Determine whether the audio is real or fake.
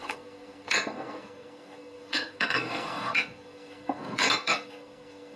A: fake